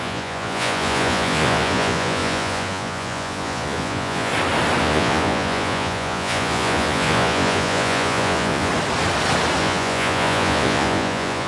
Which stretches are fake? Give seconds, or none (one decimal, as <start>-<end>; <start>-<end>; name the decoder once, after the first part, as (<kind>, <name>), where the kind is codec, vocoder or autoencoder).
0.0-4.3 (vocoder, Vocos); 4.8-8.7; 9.6-11.5